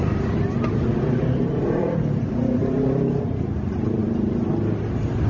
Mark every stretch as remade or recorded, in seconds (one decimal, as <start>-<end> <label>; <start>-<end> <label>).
0.0-5.3 recorded